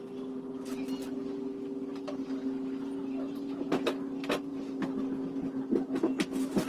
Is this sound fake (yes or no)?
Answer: no